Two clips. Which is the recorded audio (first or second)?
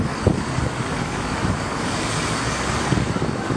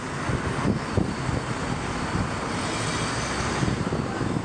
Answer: second